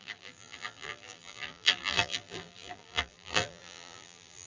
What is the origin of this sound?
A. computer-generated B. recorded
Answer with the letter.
A